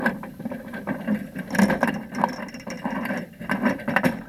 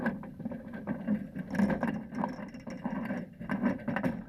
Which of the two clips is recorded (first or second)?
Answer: second